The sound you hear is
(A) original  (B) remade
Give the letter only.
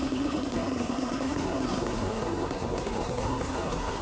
B